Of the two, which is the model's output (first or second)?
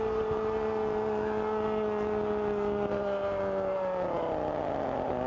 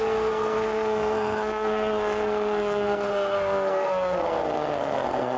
second